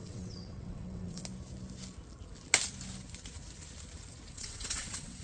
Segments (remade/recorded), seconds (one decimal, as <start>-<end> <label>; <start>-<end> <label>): 0.0-1.2 remade; 1.2-4.3 recorded; 4.3-5.2 remade